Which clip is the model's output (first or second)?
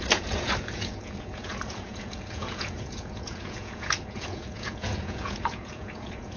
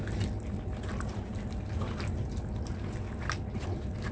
first